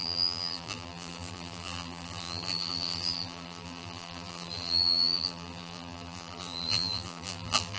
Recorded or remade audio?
remade